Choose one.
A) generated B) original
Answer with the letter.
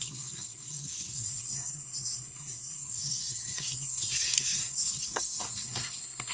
A